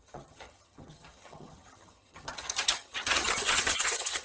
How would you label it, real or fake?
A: fake